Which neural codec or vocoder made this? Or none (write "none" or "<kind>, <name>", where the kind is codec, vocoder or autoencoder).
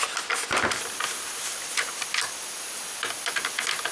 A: none